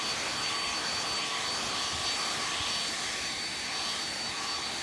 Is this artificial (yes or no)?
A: no